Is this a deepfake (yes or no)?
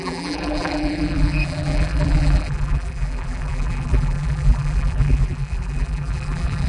yes